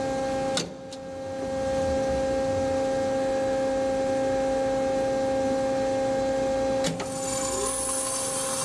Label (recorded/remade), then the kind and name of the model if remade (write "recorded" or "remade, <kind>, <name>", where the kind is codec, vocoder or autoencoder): recorded